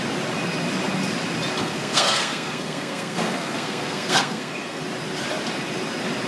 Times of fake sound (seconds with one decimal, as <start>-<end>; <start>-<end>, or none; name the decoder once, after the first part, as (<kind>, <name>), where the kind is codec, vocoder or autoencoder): 1.6-4.8 (codec, SNAC)